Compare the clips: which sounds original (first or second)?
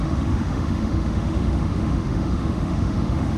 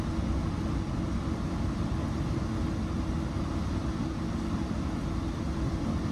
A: second